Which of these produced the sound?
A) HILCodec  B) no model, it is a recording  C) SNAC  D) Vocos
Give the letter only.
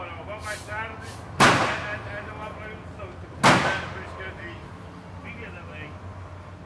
B